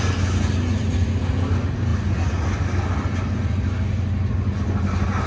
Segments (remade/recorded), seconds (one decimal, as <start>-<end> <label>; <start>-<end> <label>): 0.0-5.3 recorded